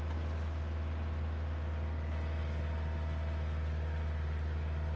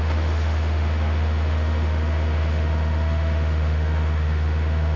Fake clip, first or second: second